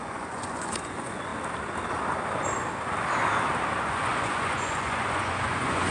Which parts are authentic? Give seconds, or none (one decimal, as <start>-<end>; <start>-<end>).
1.3-3.8